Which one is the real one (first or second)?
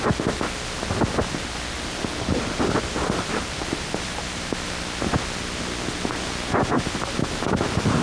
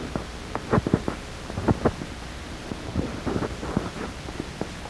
first